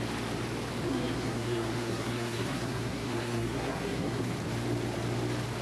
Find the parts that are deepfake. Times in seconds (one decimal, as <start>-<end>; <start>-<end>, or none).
0.9-4.3